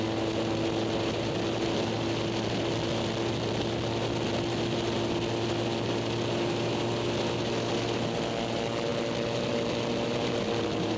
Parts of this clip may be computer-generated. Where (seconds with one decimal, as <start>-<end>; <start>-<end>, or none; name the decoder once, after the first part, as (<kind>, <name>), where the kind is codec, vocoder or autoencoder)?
none